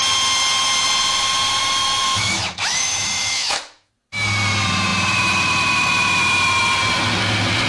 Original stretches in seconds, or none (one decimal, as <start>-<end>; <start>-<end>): 0.0-1.6; 3.9-7.7